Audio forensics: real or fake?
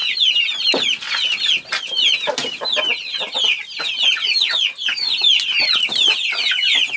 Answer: real